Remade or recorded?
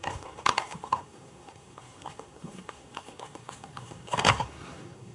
remade